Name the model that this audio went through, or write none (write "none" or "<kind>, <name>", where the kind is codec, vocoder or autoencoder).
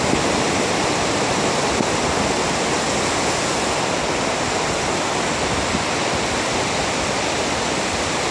none